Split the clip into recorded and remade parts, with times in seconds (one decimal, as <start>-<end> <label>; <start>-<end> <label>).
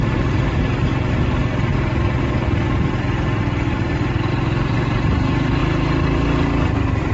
0.0-1.7 remade; 1.7-4.3 recorded; 4.3-5.6 remade; 5.6-7.1 recorded